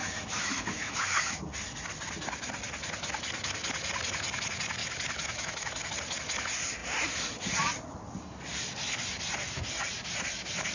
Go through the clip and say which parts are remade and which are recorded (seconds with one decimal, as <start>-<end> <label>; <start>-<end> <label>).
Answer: 0.0-1.5 remade; 1.5-4.8 recorded; 4.8-5.9 remade; 5.9-10.7 recorded